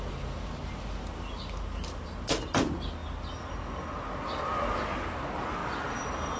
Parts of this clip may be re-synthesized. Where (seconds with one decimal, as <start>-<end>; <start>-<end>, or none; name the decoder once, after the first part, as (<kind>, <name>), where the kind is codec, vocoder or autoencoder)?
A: none